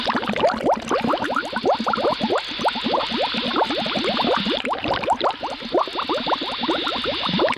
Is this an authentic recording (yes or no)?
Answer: yes